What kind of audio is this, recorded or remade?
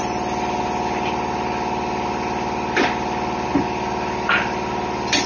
recorded